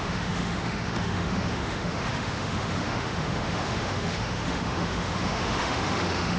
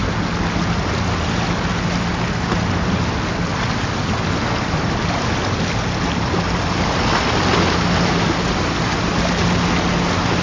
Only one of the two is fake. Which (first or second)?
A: first